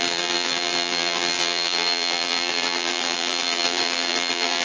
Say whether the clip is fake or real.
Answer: fake